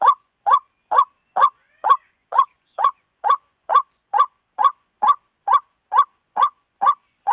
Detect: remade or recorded remade